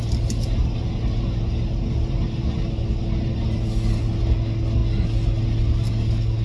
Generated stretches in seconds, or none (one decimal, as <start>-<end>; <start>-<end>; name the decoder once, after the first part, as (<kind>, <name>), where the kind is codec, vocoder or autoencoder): none